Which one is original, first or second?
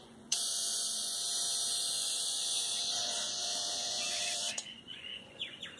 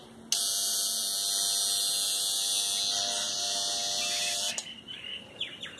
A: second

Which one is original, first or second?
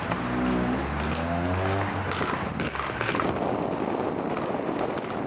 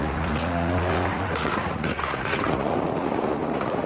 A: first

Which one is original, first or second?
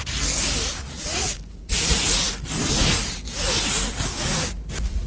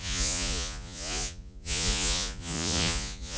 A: first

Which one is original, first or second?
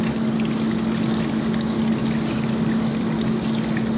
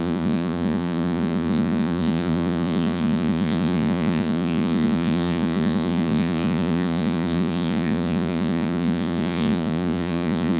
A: first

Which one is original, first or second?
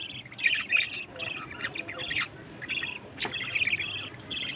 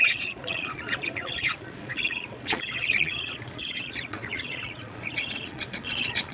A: first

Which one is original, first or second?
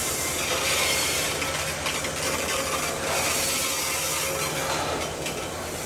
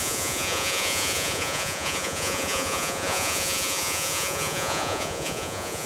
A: first